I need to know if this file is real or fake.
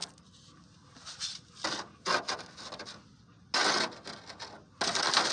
real